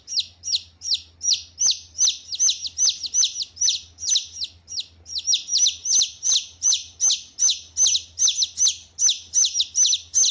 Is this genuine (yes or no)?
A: yes